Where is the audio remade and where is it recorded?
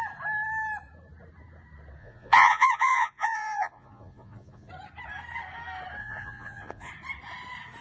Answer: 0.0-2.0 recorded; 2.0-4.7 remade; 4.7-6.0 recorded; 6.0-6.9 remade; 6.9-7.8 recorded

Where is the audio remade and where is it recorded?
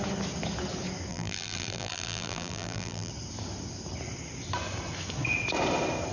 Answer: 0.0-1.1 recorded; 1.1-3.1 remade; 3.1-6.1 recorded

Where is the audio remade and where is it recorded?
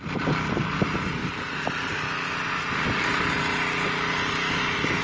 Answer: 0.0-5.0 recorded